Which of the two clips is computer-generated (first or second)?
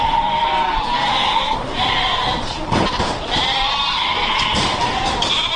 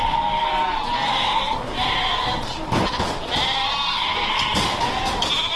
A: first